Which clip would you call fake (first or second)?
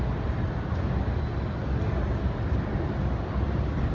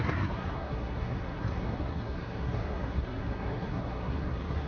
second